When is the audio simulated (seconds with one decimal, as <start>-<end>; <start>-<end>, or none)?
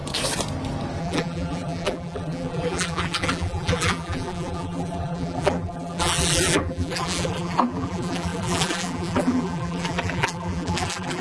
1.0-11.2